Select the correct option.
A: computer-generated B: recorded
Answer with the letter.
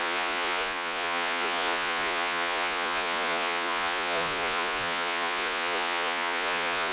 A